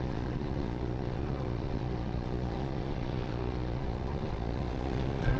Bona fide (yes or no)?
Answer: no